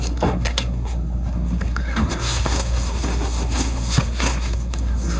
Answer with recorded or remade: remade